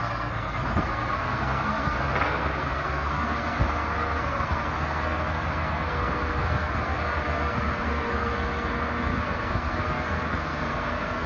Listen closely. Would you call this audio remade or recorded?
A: remade